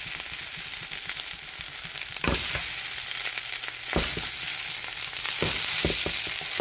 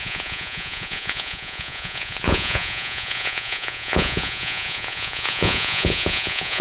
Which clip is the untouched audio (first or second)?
first